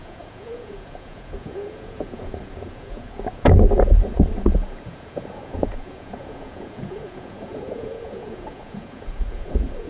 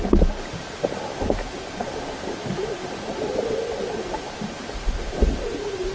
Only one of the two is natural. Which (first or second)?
second